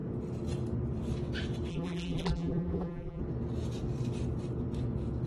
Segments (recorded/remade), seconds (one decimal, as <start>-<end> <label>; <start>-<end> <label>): 0.0-1.7 recorded; 1.7-3.2 remade; 3.2-5.3 recorded